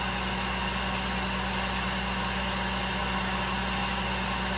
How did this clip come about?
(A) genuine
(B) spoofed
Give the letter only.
A